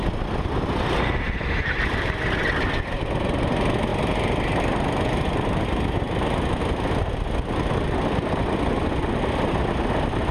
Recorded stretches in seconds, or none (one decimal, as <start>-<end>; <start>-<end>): 0.0-10.3